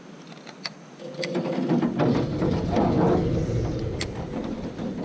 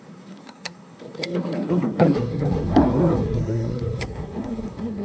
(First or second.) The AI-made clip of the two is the second